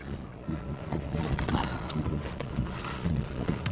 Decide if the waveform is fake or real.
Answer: fake